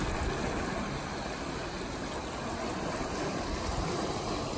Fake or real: real